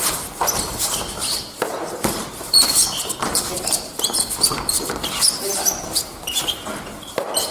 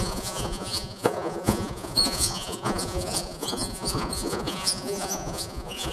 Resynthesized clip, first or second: second